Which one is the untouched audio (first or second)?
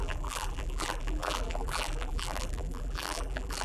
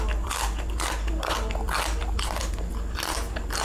second